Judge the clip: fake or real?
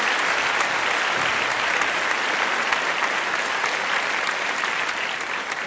real